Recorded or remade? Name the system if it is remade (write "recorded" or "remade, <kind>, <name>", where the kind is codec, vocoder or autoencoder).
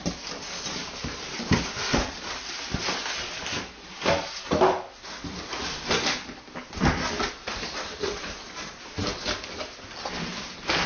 recorded